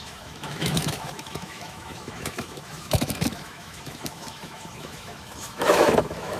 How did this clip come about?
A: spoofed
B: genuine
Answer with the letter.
A